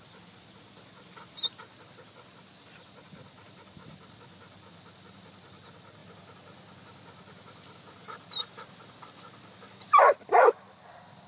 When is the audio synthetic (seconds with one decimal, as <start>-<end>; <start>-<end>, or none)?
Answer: 6.0-10.0